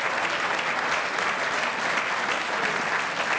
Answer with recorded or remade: recorded